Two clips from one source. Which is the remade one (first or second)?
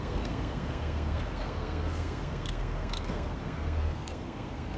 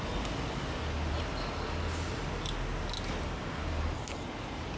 first